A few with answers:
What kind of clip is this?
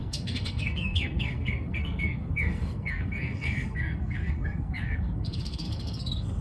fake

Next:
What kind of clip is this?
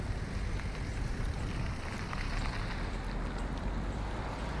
real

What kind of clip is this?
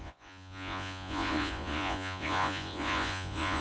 fake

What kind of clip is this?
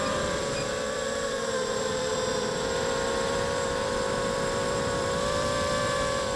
fake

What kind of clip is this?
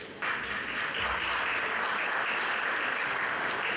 real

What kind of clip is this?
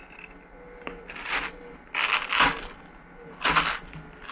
real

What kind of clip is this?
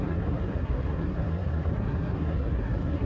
fake